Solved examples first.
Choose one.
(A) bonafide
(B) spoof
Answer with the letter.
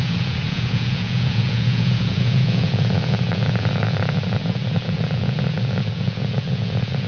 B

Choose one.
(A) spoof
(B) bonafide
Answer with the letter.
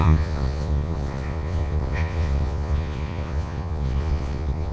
A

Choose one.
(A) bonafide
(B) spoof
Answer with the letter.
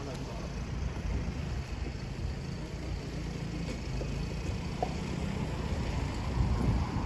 A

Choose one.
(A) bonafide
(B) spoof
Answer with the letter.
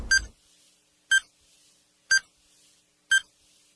A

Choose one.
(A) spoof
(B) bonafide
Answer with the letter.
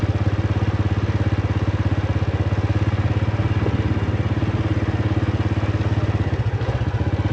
B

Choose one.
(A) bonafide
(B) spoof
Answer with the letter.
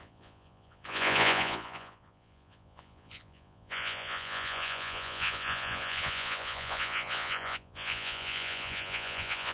B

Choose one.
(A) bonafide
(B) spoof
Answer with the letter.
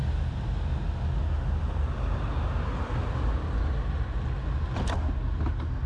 A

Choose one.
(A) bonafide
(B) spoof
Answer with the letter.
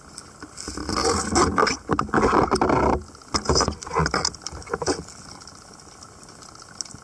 A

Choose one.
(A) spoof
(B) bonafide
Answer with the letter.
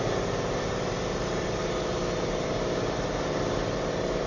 B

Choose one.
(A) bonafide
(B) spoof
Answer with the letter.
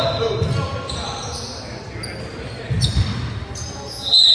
A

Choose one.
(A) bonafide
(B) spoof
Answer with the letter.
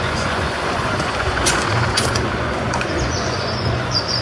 B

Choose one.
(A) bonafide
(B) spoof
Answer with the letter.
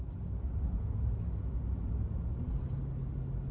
A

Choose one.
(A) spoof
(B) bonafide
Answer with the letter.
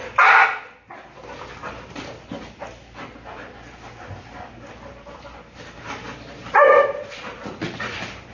B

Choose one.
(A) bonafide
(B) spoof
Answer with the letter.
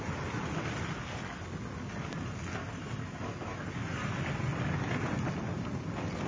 A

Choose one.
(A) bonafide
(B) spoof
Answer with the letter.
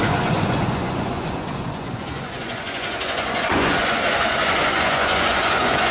B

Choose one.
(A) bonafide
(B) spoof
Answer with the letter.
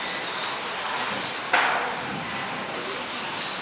A